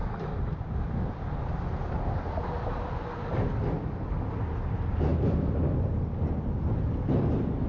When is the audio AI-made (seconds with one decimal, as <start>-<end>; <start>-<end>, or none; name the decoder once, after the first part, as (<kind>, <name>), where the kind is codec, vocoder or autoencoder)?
0.0-1.3 (vocoder, BigVGAN v2); 5.1-6.1